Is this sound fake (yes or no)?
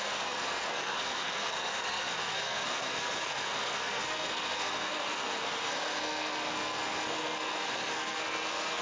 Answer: yes